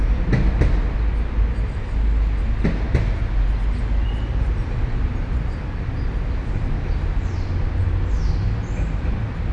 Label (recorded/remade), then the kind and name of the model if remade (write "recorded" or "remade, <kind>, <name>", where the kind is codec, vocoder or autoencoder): recorded